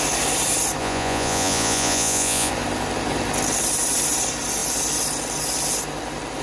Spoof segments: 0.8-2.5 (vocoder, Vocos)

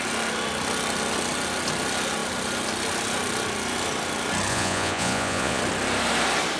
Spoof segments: 4.5-5.6 (vocoder, Vocos)

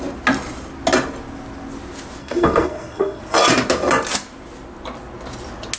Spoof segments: 2.2-3.2 (codec, SNAC)

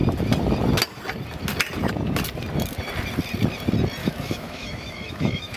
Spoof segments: 4.0-5.6 (autoencoder, DAC-VAE)

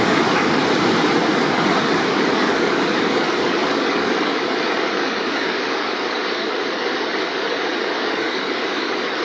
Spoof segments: 0.0-0.6 (codec, DAC); 1.3-9.2

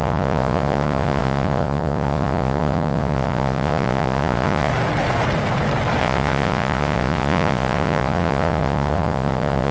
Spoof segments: 0.0-4.7 (vocoder, Vocos); 6.0-9.7